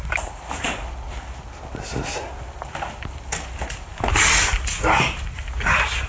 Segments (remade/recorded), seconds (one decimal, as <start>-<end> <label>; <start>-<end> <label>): 0.0-6.1 recorded